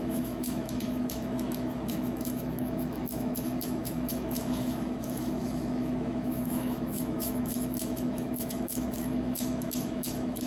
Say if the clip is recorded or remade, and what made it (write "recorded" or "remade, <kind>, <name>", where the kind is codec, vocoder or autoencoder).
remade, autoencoder, DAC-VAE